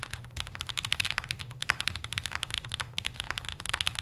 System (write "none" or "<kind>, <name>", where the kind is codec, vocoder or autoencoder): autoencoder, DAC-VAE